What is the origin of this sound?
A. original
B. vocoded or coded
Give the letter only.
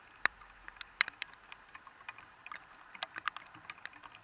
B